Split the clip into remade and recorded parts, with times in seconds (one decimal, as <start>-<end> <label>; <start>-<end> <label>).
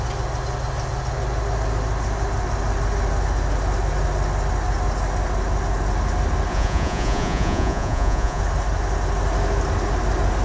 0.0-6.5 recorded; 6.5-8.4 remade; 8.4-10.4 recorded